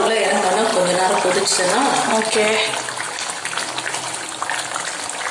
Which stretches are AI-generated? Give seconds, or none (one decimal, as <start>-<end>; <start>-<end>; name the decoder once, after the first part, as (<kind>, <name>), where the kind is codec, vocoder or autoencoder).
none

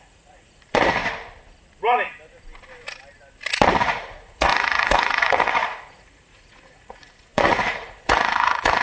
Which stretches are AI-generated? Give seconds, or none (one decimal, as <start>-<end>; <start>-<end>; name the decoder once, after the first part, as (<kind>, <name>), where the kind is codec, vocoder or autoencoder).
0.0-1.0 (vocoder, Vocos); 3.8-8.8